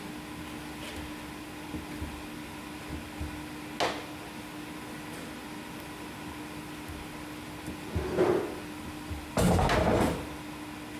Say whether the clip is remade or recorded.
recorded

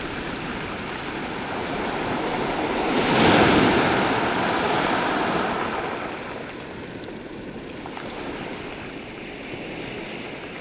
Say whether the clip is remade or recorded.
recorded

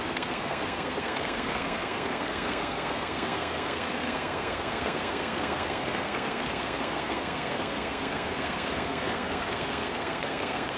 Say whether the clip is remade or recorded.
remade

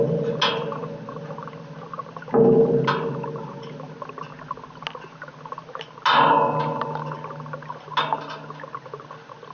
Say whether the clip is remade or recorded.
recorded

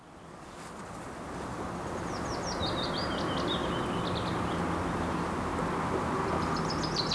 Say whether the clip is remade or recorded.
recorded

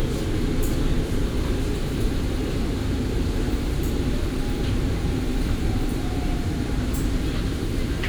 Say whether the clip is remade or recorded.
remade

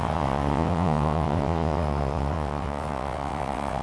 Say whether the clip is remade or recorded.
remade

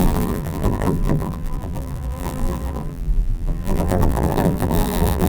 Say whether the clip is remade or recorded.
remade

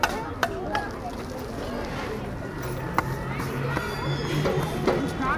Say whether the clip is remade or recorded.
recorded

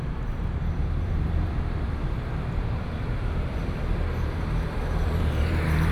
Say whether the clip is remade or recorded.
remade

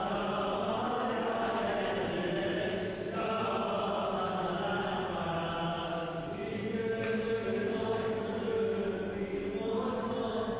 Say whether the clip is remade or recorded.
recorded